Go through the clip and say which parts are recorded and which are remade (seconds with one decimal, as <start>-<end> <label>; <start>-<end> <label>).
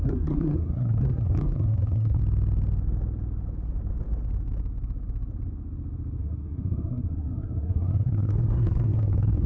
0.0-2.2 remade; 2.2-6.2 recorded; 6.2-9.5 remade